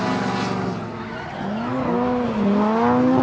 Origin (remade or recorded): recorded